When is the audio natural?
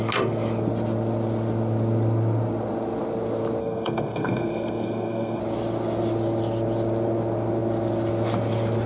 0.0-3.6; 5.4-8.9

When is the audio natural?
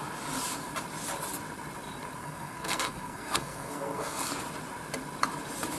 0.0-2.2; 4.3-5.8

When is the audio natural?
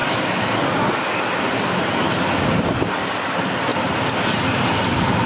0.0-5.3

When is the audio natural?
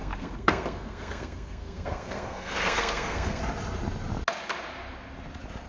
3.4-5.7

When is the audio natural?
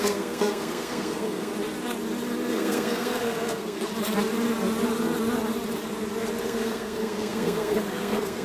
1.5-2.5; 3.9-6.4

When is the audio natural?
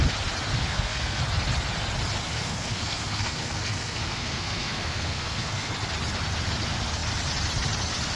0.0-0.7; 1.2-2.3; 5.7-8.2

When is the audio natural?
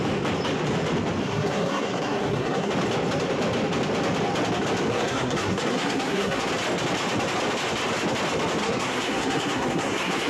0.0-1.2; 2.7-4.9; 6.5-8.6